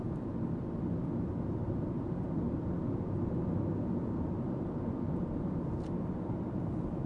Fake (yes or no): no